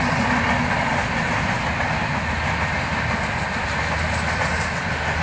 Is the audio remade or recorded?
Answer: recorded